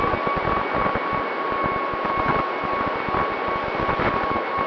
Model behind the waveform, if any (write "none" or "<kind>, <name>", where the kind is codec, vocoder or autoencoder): none